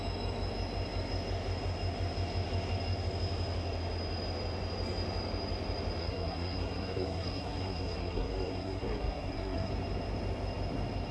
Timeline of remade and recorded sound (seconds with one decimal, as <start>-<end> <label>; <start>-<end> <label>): 0.0-6.0 recorded; 6.0-9.7 remade; 9.7-11.1 recorded